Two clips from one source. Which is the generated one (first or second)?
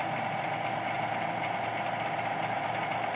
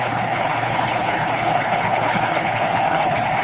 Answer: second